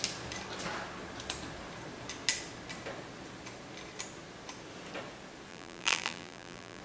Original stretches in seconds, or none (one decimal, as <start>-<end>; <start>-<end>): 0.0-5.5